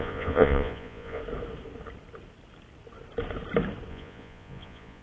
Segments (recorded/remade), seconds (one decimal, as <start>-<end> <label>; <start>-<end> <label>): 0.0-1.2 remade; 1.2-3.9 recorded; 3.9-5.0 remade